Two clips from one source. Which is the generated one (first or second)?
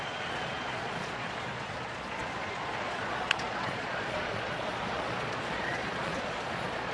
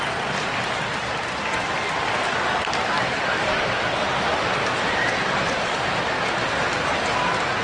first